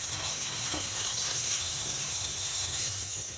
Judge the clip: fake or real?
fake